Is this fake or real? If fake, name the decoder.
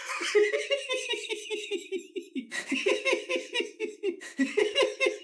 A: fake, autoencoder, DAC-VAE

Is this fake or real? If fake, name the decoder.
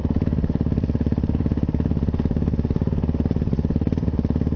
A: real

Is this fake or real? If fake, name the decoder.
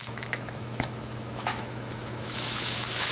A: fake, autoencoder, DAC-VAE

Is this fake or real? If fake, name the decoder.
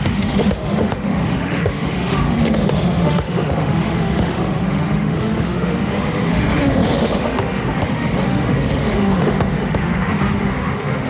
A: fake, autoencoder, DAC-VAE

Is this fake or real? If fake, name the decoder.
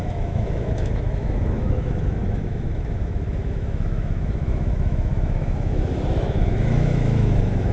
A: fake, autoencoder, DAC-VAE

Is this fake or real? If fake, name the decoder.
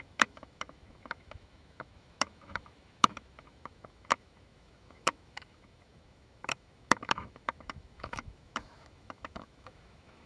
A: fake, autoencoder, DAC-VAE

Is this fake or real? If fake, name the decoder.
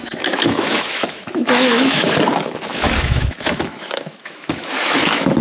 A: fake, autoencoder, DAC-VAE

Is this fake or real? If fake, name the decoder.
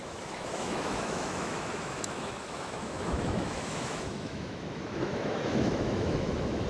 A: fake, autoencoder, DAC-VAE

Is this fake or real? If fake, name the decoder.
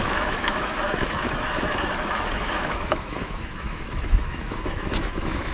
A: fake, autoencoder, DAC-VAE